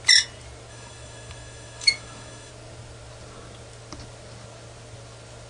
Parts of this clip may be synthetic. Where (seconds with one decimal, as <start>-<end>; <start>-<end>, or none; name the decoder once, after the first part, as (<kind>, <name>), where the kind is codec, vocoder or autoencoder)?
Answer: 0.7-2.5 (autoencoder, DAC-VAE)